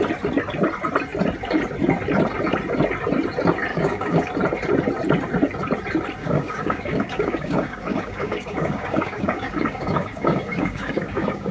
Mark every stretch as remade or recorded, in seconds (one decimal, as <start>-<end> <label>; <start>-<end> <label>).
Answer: 0.0-3.7 recorded; 3.7-4.3 remade; 4.3-6.2 recorded; 6.2-11.5 remade